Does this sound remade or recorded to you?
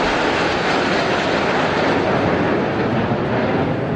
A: recorded